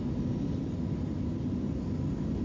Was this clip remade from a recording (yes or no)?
no